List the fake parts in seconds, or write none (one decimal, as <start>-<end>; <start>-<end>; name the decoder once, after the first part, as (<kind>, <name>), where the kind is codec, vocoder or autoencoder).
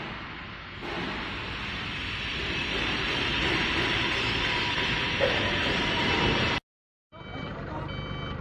2.3-6.0 (vocoder, BigVGAN v2); 7.3-7.8